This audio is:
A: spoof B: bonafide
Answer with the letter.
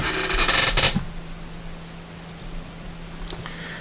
B